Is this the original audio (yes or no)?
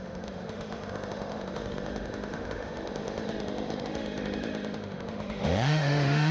no